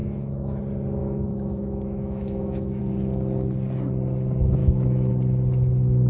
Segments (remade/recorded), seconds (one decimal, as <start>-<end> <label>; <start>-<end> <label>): 0.0-0.6 remade; 0.6-1.0 recorded; 1.0-2.8 remade; 2.8-4.6 recorded; 4.6-5.1 remade; 5.1-6.1 recorded